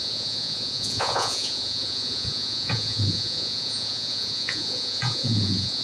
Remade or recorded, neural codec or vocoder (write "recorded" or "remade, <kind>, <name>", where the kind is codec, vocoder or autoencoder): remade, vocoder, Vocos